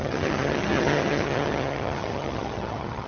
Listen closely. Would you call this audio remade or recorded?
remade